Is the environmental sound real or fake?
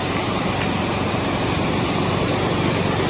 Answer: real